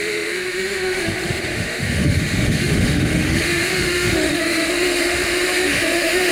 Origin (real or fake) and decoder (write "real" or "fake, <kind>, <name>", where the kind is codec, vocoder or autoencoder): fake, autoencoder, DAC-VAE